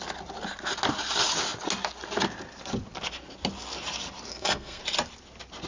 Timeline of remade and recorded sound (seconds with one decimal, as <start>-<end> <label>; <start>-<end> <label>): 0.0-4.3 recorded; 4.3-4.8 remade; 4.8-5.7 recorded